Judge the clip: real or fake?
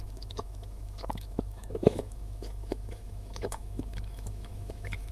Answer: fake